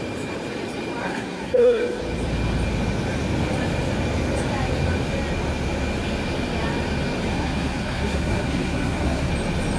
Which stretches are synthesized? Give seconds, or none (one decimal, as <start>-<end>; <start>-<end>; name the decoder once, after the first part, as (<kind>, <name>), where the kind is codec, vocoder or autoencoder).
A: 1.0-2.0 (codec, SNAC); 7.3-9.3